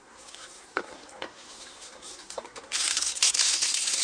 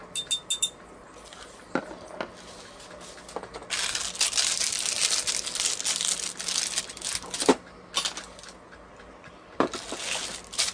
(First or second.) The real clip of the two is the second